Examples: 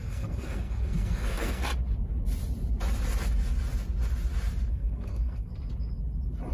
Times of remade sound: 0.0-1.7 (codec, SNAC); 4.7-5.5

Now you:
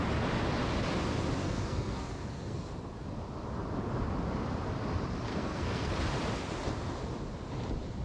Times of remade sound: 1.4-2.7 (codec, SNAC); 5.3-5.9

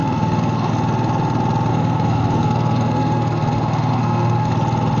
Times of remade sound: 0.0-0.7 (codec, SNAC); 1.7-4.5

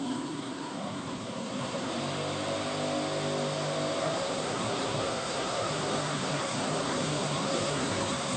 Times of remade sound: 0.0-1.9 (codec, SNAC); 4.0-8.4

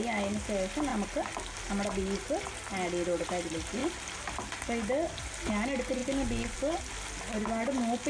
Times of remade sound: none

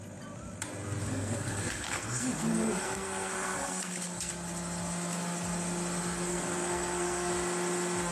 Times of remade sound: 1.1-4.3 (codec, SNAC); 6.3-7.3

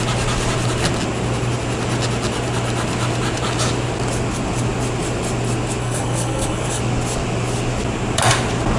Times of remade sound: 5.8-6.8 (codec, SNAC)

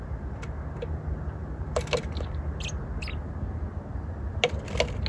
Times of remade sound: none